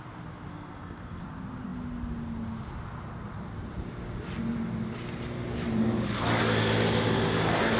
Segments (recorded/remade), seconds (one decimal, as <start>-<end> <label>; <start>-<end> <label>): 0.0-0.5 recorded; 0.5-1.2 remade; 1.2-7.8 recorded